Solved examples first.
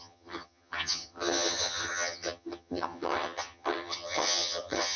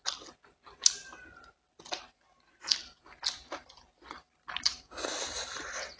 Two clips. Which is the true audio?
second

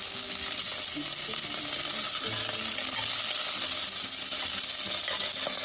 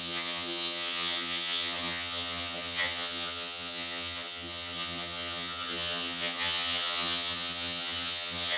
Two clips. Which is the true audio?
first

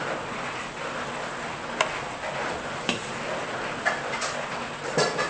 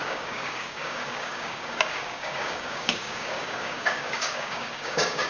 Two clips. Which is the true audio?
first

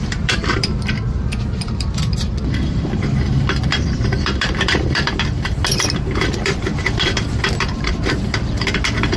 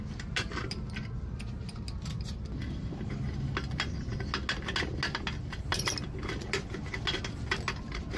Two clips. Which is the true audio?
second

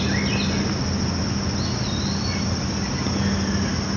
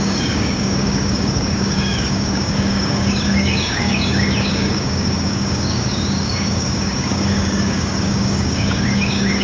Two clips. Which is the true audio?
first